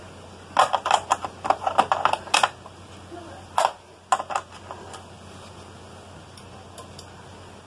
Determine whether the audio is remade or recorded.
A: recorded